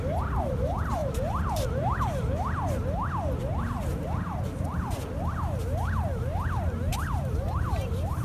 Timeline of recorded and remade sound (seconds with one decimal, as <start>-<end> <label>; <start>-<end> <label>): 0.0-1.0 recorded; 1.0-2.0 remade; 2.0-6.9 recorded; 6.9-8.2 remade